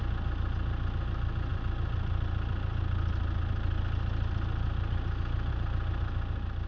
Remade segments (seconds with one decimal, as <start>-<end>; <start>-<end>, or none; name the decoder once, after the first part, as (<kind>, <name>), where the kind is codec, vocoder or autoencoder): none